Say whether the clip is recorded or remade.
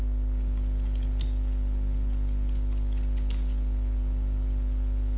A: recorded